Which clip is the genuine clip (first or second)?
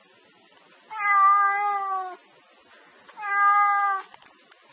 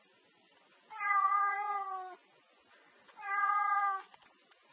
first